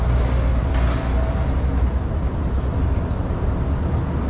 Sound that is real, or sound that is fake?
real